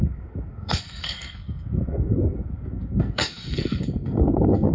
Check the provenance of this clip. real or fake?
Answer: fake